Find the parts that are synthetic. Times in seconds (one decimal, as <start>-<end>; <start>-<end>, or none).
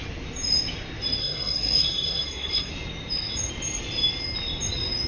1.2-2.7